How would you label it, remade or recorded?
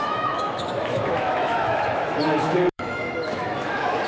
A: remade